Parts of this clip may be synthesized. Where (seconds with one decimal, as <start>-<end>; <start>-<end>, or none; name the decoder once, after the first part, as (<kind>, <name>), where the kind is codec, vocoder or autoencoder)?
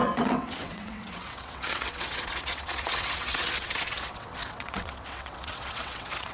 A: 0.0-6.3 (vocoder, WaveNeXt)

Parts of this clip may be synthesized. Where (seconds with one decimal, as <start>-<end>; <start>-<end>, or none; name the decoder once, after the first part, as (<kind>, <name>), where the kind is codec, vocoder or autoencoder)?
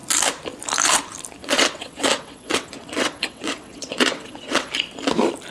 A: 1.4-4.7 (vocoder, WaveNeXt)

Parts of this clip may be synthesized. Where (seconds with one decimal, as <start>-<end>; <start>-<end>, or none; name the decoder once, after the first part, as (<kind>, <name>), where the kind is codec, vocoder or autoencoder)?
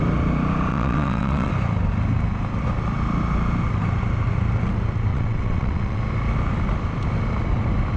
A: 0.7-1.5 (vocoder, WaveNeXt); 5.1-6.0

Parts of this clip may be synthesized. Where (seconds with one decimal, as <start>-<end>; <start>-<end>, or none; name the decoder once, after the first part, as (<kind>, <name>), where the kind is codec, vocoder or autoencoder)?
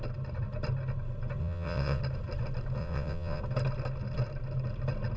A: 1.4-2.0 (vocoder, WaveNeXt); 2.8-3.4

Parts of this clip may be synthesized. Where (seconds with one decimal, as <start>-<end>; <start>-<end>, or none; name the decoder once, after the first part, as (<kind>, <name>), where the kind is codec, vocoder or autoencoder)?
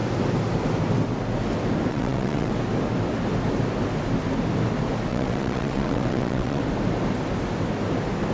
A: 1.9-2.5 (vocoder, WaveNeXt); 5.1-6.6